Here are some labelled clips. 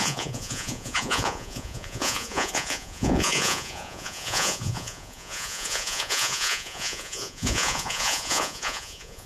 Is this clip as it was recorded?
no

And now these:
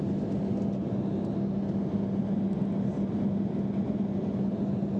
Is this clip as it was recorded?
yes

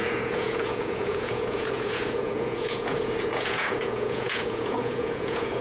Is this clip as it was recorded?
no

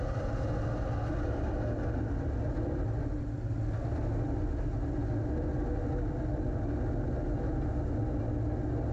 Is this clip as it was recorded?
yes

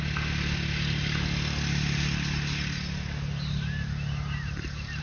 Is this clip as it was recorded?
yes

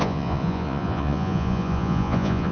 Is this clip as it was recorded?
no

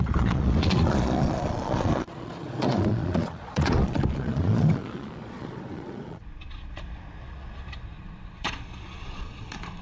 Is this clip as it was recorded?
no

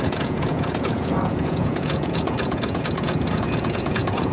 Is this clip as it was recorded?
no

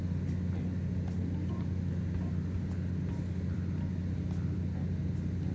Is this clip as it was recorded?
yes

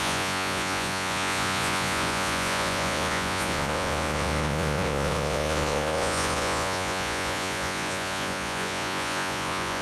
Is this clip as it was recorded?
no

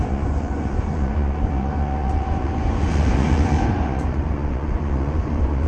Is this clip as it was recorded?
no